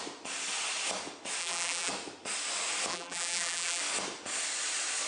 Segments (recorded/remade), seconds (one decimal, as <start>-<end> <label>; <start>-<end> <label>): 0.0-1.4 recorded; 1.4-1.9 remade; 1.9-2.9 recorded; 2.9-3.8 remade; 3.8-5.1 recorded